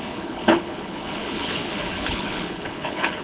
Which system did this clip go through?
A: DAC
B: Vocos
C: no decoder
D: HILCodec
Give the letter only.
D